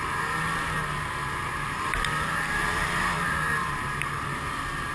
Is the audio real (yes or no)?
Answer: no